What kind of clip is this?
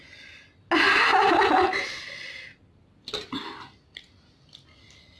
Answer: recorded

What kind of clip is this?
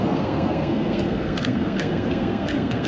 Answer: remade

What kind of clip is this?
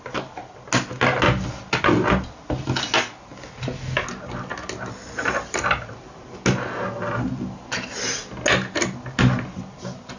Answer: recorded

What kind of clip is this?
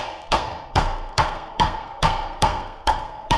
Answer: remade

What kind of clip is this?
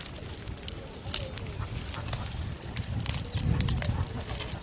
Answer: recorded